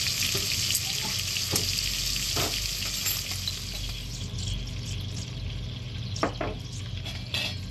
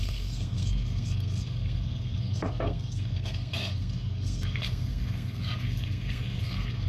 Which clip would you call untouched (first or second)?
first